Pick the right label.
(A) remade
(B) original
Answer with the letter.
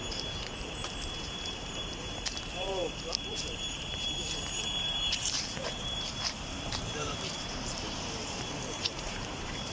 A